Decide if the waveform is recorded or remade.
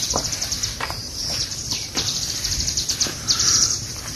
remade